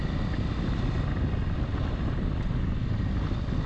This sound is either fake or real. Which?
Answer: real